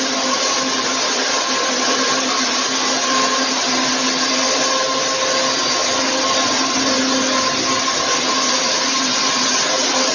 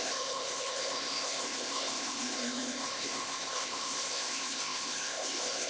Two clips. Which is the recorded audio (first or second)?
first